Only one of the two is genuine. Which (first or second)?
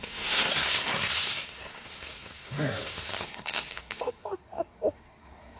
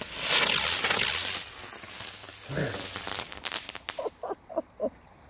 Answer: second